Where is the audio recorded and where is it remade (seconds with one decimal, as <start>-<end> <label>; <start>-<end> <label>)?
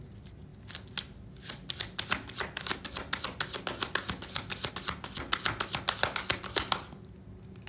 0.0-7.7 recorded